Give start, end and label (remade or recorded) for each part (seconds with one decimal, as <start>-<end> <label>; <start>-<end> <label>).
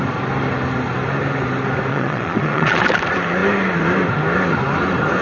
0.0-1.9 recorded; 1.9-2.8 remade; 2.8-5.2 recorded